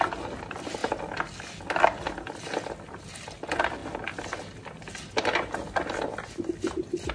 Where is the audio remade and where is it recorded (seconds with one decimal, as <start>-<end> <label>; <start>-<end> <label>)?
0.0-7.1 recorded